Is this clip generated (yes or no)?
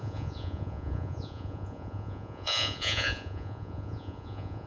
yes